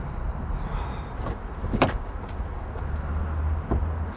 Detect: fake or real real